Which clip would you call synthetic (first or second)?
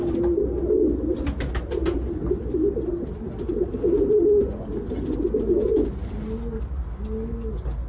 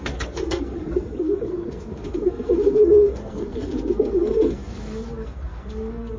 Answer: second